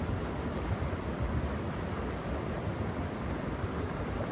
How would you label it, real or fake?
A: real